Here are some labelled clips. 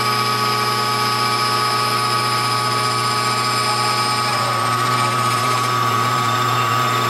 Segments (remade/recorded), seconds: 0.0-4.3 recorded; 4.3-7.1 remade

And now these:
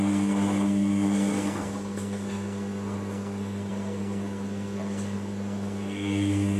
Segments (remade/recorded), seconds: 0.0-6.6 remade

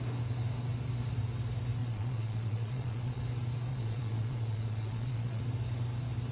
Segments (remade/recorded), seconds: 0.0-1.8 recorded; 1.8-3.2 remade; 3.2-3.7 recorded; 3.7-5.4 remade; 5.4-6.3 recorded